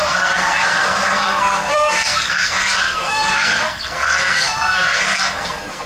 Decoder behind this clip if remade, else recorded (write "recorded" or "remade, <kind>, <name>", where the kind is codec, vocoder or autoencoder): remade, codec, SNAC